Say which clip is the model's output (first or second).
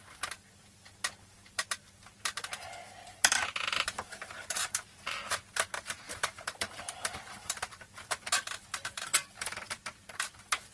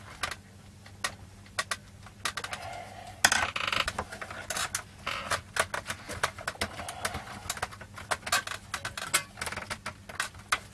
first